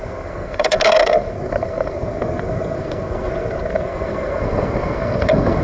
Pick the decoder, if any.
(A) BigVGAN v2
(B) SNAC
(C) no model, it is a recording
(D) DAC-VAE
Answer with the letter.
B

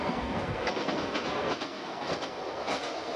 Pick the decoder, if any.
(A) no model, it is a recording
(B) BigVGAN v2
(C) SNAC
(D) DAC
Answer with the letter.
C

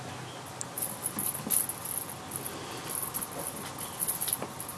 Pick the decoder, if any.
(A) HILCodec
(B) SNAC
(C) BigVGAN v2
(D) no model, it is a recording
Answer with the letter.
D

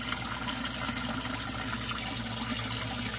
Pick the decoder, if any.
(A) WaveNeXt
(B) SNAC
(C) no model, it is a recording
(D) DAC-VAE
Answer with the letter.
C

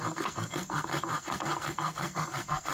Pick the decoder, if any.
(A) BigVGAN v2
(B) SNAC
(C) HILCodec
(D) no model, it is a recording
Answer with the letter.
B